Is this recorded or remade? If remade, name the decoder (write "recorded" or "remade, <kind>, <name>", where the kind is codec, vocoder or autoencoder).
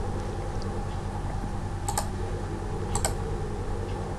recorded